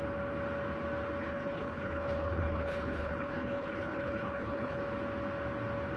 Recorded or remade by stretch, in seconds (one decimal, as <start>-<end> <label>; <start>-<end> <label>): 0.0-1.2 recorded; 1.2-4.8 remade; 4.8-6.0 recorded